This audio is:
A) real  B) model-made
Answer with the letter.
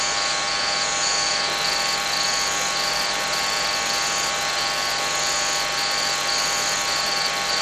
A